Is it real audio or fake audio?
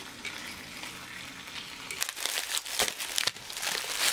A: real